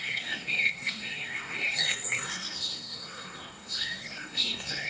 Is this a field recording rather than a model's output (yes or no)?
no